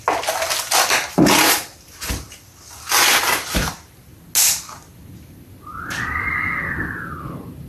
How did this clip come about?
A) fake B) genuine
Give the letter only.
B